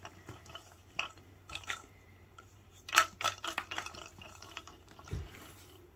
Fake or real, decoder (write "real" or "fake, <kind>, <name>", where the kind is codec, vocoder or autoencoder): fake, vocoder, BigVGAN v2